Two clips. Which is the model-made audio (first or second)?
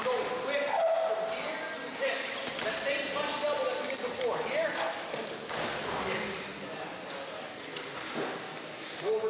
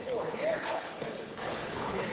second